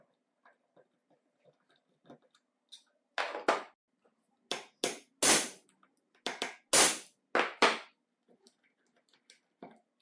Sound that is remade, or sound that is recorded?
recorded